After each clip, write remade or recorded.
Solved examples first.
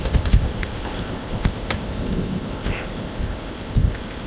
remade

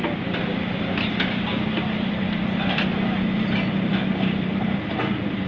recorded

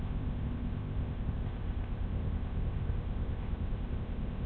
remade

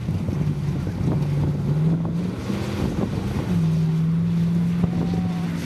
recorded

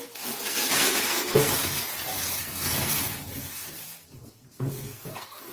remade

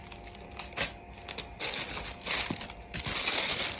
recorded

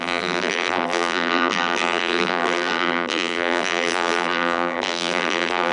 remade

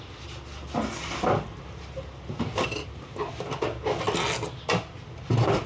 recorded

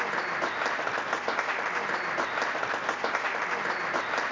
recorded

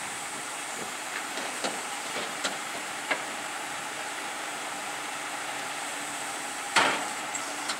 remade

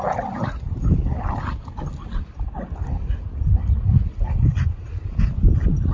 recorded